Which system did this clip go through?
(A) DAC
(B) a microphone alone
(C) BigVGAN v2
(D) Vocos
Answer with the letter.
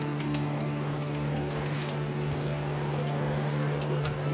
A